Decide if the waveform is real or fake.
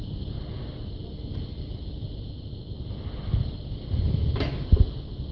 real